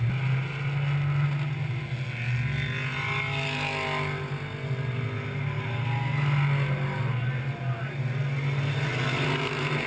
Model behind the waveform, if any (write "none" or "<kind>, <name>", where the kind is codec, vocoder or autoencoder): none